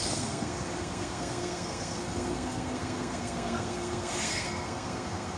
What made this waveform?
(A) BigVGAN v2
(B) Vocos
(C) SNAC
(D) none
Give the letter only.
C